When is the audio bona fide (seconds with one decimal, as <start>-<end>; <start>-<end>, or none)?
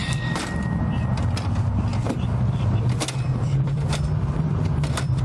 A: 1.1-1.9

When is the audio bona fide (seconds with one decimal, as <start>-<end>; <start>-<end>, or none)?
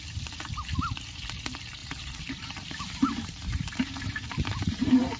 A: 0.0-1.8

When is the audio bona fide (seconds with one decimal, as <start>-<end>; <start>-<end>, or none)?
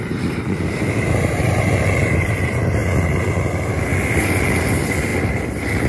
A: 2.8-3.5; 3.9-4.4; 5.1-5.9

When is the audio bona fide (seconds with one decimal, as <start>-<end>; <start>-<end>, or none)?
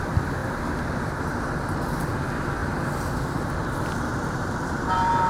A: 0.0-0.4; 1.2-2.6; 3.2-3.6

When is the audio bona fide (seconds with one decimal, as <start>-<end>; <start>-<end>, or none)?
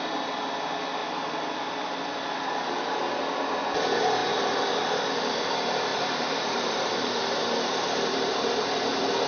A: 0.0-5.9; 8.5-9.3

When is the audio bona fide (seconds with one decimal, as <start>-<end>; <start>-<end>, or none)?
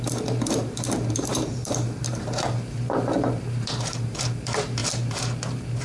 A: none